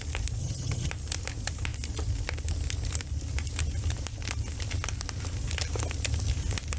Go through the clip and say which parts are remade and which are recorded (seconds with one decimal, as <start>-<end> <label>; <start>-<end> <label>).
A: 0.0-0.4 recorded; 0.4-0.9 remade; 0.9-6.8 recorded

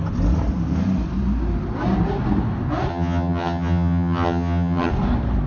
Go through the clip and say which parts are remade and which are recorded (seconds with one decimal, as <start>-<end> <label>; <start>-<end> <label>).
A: 0.0-2.9 recorded; 2.9-4.9 remade; 4.9-5.5 recorded

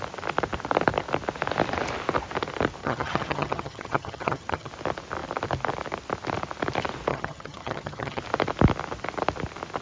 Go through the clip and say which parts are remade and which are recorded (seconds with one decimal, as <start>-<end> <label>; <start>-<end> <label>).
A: 0.0-2.8 recorded; 2.8-4.7 remade; 4.7-7.1 recorded; 7.1-8.2 remade; 8.2-9.8 recorded

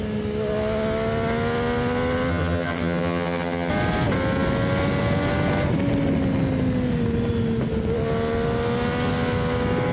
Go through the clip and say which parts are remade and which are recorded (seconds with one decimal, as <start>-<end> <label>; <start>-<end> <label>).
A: 0.0-2.3 recorded; 2.3-3.7 remade; 3.7-9.9 recorded